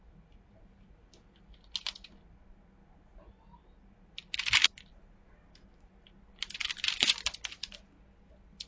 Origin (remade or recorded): recorded